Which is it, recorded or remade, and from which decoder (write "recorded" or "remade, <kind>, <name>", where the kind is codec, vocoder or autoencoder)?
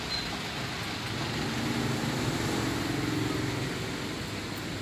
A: recorded